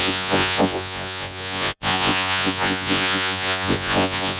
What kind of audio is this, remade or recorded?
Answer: remade